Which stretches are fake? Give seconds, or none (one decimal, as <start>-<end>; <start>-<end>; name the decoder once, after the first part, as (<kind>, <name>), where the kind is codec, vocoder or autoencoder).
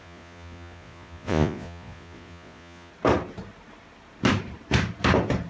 0.0-2.9 (vocoder, Vocos)